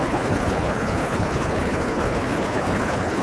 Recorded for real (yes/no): no